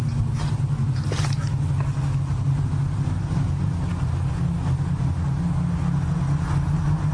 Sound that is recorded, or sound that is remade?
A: recorded